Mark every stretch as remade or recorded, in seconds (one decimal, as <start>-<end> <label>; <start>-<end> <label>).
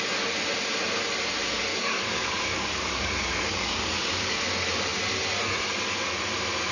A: 0.0-1.7 recorded; 1.7-4.4 remade; 4.4-6.7 recorded